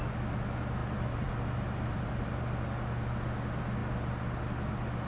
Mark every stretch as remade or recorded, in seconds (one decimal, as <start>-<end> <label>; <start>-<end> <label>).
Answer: 0.0-0.8 recorded; 0.8-2.3 remade; 2.3-5.1 recorded